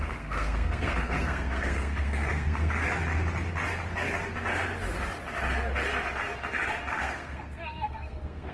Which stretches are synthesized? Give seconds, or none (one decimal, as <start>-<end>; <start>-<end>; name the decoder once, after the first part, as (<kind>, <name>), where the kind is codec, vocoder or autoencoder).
0.0-2.8 (codec, SNAC); 7.0-8.5